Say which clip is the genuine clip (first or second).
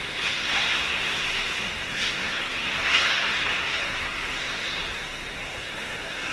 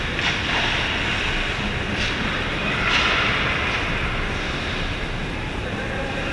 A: second